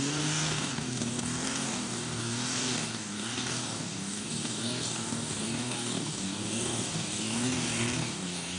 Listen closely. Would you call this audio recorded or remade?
remade